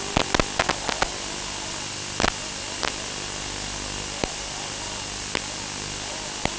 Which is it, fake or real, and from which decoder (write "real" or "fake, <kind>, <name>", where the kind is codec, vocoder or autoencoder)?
real